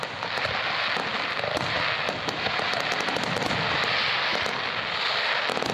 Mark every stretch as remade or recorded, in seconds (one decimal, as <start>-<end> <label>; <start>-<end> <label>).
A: 0.0-5.7 recorded